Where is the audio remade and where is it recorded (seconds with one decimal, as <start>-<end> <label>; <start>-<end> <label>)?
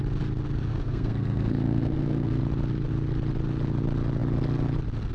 0.0-0.7 recorded; 0.7-2.4 remade; 2.4-5.1 recorded